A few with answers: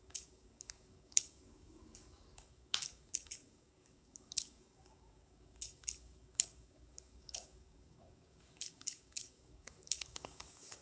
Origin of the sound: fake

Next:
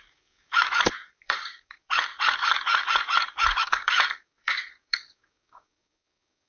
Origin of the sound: fake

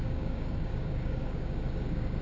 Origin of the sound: fake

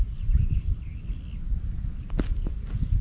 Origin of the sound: real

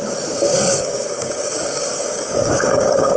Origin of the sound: fake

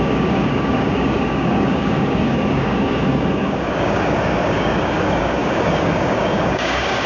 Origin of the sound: fake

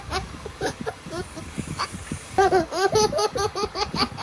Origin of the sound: fake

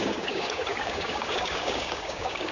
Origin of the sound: fake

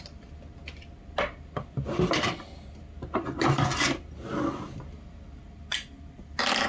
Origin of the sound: real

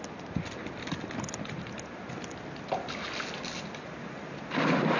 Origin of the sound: real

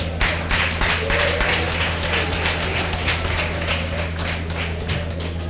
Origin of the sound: real